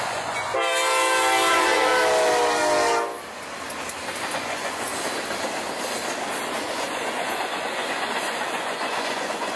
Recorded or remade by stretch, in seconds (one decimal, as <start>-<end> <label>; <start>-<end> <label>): 0.0-0.5 remade; 0.5-1.5 recorded; 1.5-1.9 remade; 1.9-4.3 recorded; 4.3-4.9 remade; 4.9-6.7 recorded; 6.7-9.6 remade